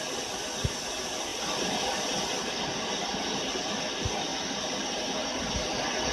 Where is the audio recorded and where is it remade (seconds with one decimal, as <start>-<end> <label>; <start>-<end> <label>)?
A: 0.0-6.1 recorded